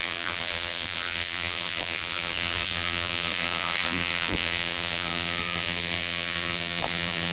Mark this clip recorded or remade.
remade